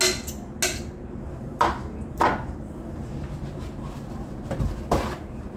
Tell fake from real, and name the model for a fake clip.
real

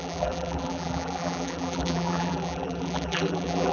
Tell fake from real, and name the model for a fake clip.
fake, vocoder, BigVGAN v2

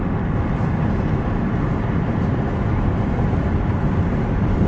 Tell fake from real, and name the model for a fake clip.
real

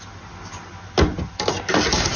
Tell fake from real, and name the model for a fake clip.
real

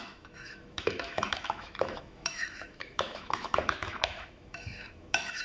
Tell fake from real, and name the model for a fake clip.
fake, autoencoder, DAC-VAE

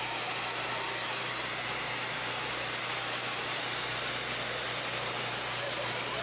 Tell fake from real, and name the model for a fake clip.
real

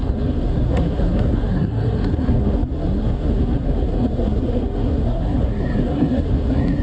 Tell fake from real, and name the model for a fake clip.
fake, codec, SNAC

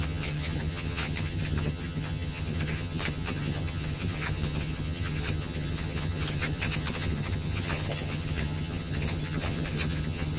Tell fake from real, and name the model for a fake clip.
fake, vocoder, HiFi-GAN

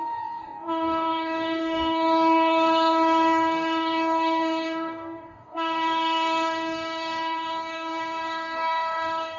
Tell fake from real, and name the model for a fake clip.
fake, codec, DAC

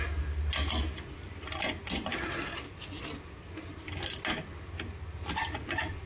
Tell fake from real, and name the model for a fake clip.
real